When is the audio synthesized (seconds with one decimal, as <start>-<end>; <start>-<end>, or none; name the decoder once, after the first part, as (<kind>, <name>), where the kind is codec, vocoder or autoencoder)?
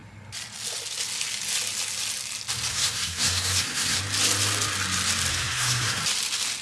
2.7-4.0 (codec, SNAC); 5.3-6.0